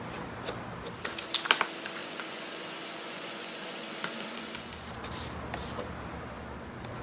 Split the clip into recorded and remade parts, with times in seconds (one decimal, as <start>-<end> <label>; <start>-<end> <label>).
0.0-2.0 recorded; 2.0-5.0 remade; 5.0-7.0 recorded